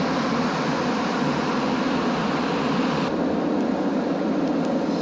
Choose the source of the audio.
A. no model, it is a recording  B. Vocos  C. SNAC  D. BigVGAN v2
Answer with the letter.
A